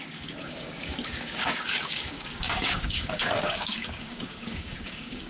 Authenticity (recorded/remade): remade